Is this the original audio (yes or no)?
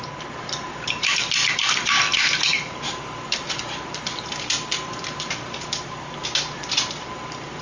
no